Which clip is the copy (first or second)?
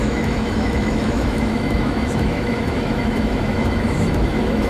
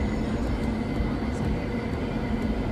first